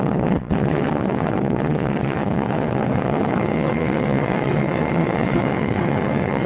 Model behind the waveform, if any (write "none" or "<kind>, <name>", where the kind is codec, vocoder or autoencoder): vocoder, WaveNeXt